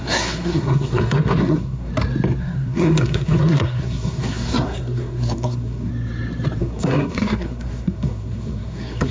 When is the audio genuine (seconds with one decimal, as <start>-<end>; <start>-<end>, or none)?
1.9-2.4; 5.9-6.6